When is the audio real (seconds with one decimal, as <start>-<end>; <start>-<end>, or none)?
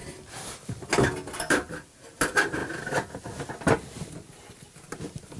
0.0-5.4